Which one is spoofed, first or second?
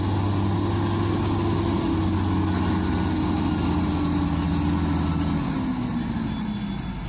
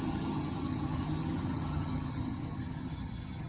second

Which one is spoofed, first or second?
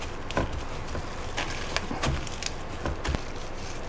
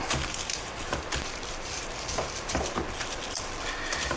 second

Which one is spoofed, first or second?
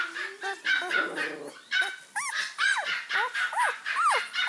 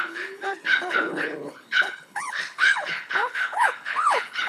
second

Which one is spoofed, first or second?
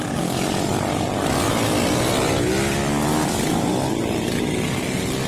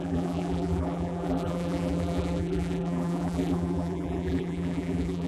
second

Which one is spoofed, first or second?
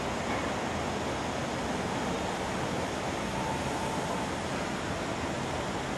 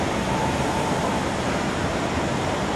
second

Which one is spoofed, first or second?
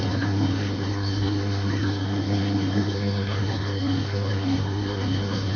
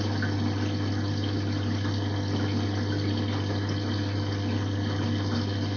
first